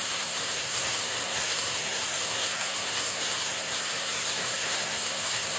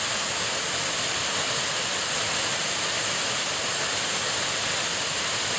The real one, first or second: second